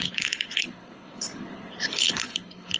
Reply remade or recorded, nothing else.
remade